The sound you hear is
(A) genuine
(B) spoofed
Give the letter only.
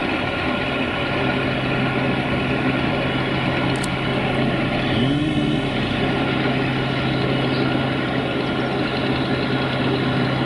A